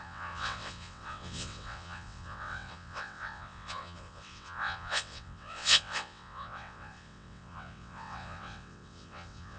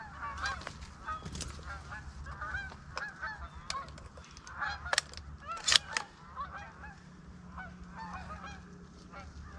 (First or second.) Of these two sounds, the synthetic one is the first